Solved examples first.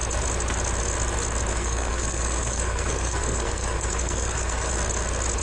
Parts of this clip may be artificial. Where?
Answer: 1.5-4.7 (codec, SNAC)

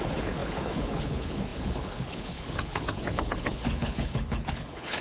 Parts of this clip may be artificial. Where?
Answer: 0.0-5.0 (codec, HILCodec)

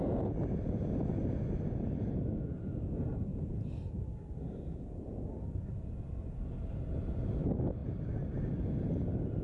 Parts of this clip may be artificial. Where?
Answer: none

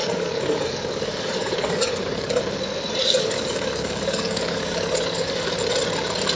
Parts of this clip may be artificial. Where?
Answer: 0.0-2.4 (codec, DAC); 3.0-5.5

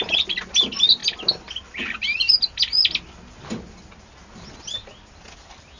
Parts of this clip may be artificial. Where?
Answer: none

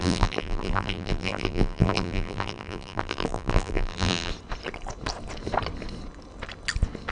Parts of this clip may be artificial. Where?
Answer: 0.0-4.3 (vocoder, BigVGAN v2)

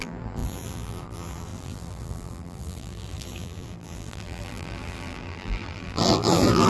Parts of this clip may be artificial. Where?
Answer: 0.0-6.7 (vocoder, BigVGAN v2)